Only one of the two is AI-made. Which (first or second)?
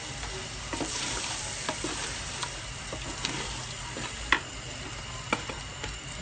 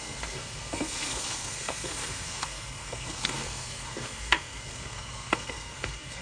second